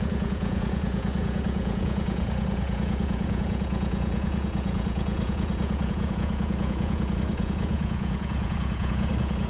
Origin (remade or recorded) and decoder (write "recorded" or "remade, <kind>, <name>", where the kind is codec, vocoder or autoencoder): remade, vocoder, Vocos